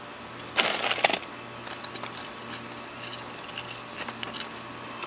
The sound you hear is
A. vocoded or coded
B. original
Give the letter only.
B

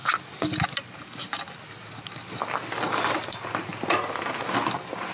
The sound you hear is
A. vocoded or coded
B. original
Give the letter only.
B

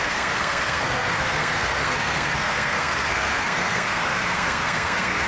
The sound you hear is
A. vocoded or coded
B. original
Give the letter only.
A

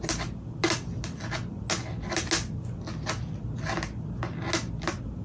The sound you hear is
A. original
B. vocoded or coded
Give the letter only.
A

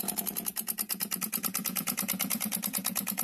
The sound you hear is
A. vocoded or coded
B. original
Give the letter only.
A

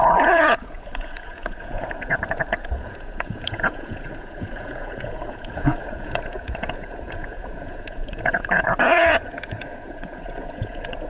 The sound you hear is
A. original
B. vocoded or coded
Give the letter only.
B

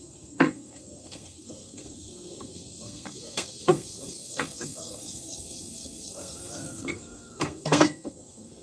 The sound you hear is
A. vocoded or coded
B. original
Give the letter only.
A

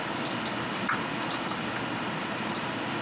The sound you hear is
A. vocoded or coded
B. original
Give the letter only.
B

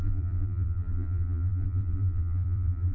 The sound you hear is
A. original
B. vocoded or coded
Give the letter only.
B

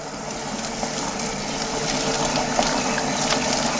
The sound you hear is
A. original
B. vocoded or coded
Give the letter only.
A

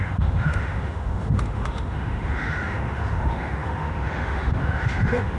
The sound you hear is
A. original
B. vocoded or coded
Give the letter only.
B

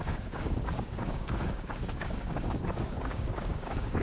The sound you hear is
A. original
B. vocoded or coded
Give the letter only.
B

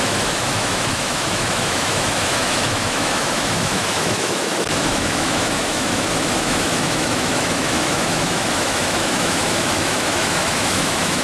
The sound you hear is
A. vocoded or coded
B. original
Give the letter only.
A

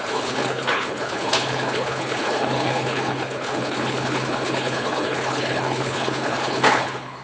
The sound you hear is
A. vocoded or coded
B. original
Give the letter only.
A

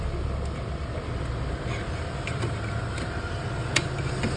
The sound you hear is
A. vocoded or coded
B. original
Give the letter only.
B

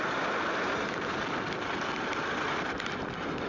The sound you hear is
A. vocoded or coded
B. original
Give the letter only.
B